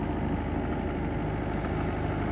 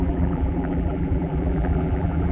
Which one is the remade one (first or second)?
second